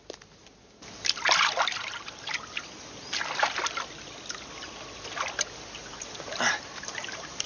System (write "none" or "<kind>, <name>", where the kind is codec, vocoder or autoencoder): none